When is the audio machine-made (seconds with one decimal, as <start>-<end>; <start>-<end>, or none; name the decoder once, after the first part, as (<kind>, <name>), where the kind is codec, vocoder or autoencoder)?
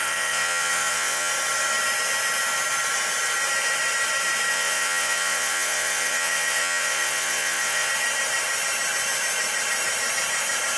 0.0-1.3 (vocoder, Vocos); 4.5-7.9